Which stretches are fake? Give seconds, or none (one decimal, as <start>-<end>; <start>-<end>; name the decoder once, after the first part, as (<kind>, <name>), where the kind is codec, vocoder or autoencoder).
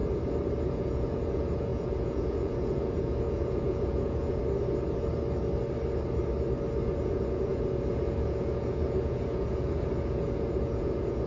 0.6-4.4 (vocoder, Vocos); 7.0-11.3